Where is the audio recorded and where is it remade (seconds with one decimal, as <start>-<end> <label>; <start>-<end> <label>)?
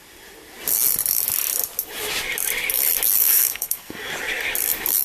0.0-3.2 recorded; 3.2-4.1 remade; 4.1-5.0 recorded